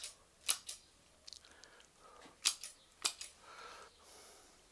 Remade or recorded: recorded